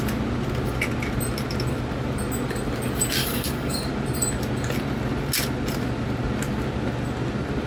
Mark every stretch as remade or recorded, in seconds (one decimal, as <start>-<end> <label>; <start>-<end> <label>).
0.0-3.2 recorded; 3.2-3.9 remade; 3.9-7.7 recorded

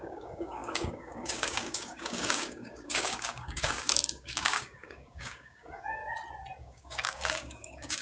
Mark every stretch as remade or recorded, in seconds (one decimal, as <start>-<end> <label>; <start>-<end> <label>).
0.0-6.0 remade; 6.0-6.6 recorded; 6.6-8.0 remade

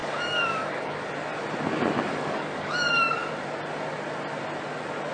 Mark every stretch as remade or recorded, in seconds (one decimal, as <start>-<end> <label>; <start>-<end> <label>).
0.0-1.1 remade; 1.1-2.1 recorded; 2.1-3.3 remade; 3.3-5.1 recorded

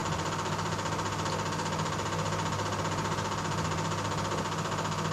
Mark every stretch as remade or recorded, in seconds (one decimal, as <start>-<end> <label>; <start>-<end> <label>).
0.0-5.1 recorded

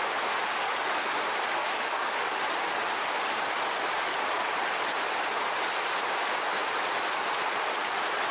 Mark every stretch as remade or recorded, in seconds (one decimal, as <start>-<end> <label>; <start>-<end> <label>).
0.0-1.6 recorded; 1.6-2.4 remade; 2.4-8.3 recorded

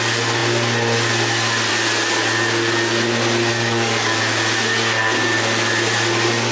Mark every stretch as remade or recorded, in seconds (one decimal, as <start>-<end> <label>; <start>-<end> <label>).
0.0-3.5 recorded; 3.5-4.2 remade; 4.2-6.5 recorded